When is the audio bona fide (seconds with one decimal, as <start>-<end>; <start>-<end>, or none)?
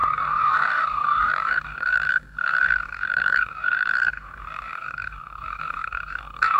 none